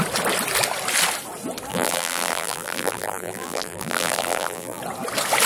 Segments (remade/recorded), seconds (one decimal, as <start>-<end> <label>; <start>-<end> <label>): 0.0-1.7 recorded; 1.7-4.8 remade; 4.8-5.5 recorded